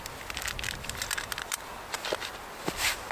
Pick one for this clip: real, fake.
real